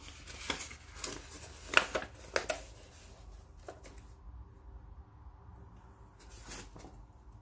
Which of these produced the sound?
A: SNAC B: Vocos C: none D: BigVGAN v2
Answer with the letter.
C